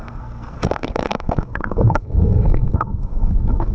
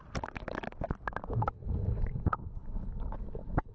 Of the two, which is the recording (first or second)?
second